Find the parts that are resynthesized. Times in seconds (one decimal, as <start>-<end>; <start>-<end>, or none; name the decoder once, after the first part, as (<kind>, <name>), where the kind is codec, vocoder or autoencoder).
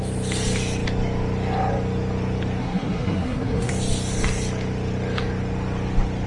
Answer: 2.6-3.7 (codec, SNAC)